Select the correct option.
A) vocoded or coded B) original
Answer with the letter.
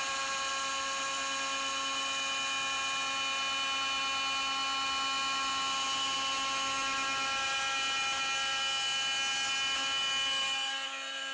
B